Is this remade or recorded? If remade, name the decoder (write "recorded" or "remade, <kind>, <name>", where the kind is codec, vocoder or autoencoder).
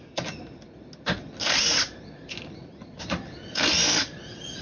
recorded